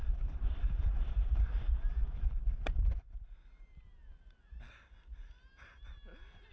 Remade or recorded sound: recorded